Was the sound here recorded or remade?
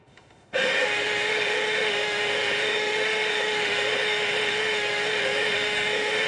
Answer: remade